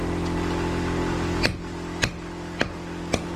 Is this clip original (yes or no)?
yes